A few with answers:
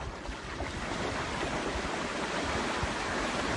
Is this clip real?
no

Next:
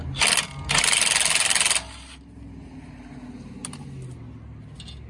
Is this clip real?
yes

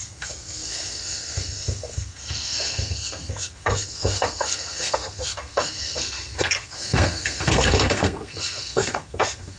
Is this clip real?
no